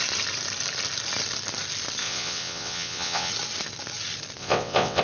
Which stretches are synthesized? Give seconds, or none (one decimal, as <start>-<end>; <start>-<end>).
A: 2.0-3.3; 4.4-5.0